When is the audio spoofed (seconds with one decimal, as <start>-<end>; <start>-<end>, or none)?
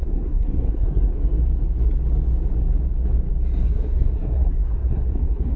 0.0-1.1; 3.6-5.6